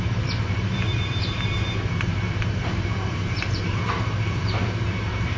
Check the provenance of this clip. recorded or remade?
remade